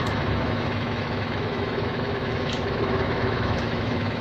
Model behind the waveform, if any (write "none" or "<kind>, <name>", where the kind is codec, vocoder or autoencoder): autoencoder, DAC-VAE